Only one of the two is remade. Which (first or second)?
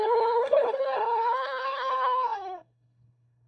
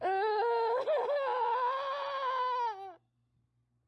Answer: first